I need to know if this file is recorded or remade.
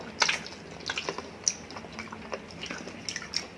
recorded